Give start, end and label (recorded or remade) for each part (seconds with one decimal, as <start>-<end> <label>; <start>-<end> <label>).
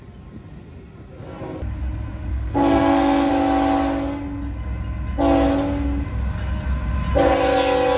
0.0-2.3 recorded; 2.3-3.3 remade; 3.3-8.0 recorded